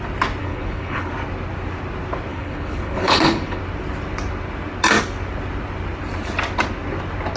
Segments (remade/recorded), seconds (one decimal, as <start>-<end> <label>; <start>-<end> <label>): 0.0-0.4 recorded; 0.4-1.1 remade; 1.1-2.3 recorded; 2.3-3.6 remade; 3.6-7.4 recorded